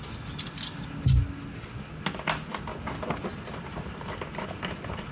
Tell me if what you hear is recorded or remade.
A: recorded